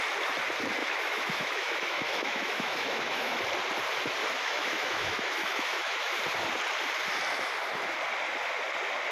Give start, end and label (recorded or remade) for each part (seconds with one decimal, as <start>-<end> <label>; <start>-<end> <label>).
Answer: 0.0-0.8 recorded; 0.8-3.4 remade; 3.4-4.2 recorded; 4.2-6.2 remade; 6.2-9.1 recorded